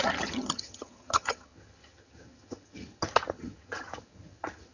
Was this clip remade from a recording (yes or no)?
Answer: yes